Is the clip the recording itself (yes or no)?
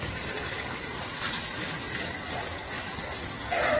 yes